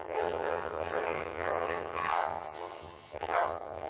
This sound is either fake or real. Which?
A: fake